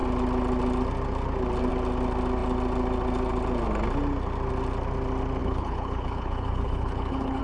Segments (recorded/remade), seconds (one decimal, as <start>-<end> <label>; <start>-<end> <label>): 0.0-5.4 recorded; 5.4-7.4 remade